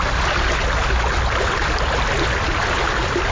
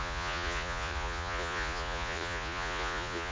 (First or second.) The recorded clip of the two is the first